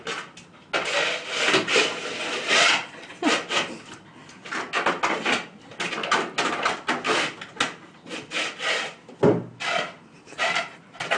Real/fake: real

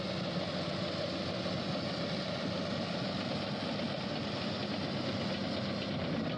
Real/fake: real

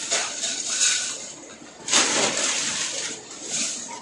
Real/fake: fake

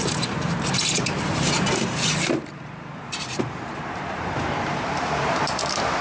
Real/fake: fake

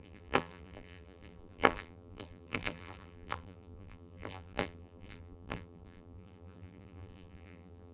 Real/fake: fake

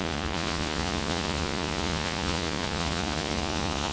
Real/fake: fake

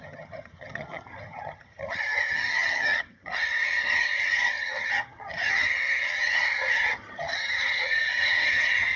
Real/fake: fake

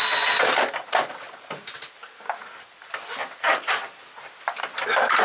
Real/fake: real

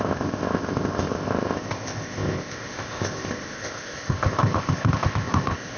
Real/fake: fake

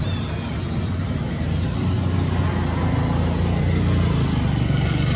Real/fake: real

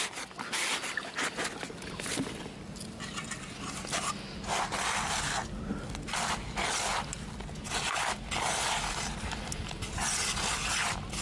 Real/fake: real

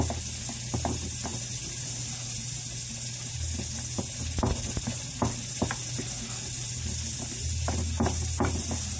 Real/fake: real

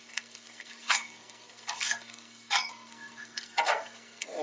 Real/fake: fake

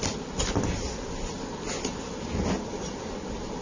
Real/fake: real